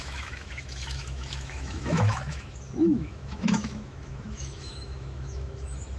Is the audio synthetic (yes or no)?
yes